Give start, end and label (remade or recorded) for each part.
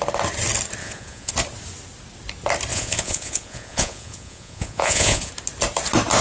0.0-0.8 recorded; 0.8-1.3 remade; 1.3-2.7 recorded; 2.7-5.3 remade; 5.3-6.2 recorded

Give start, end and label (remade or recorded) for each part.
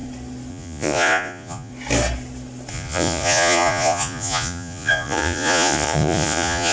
0.0-0.5 recorded; 0.5-1.7 remade; 1.7-2.7 recorded; 2.7-6.7 remade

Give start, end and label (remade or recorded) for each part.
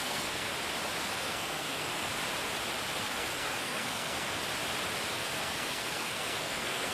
0.0-0.5 remade; 0.5-1.0 recorded; 1.0-2.1 remade; 2.1-3.0 recorded; 3.0-4.4 remade; 4.4-5.1 recorded; 5.1-6.9 remade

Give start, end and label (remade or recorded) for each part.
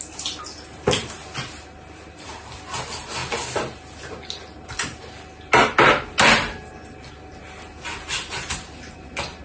0.0-9.4 recorded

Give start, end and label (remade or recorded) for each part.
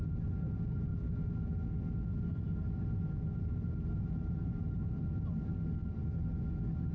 0.0-6.9 recorded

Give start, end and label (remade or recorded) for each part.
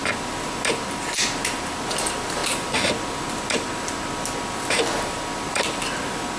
0.0-6.4 recorded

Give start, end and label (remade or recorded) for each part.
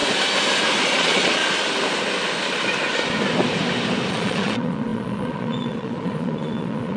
0.0-0.8 recorded; 0.8-1.4 remade; 1.4-4.1 recorded; 4.1-7.0 remade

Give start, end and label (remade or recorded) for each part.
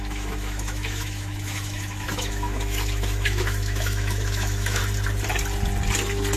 0.0-4.8 remade; 4.8-6.4 recorded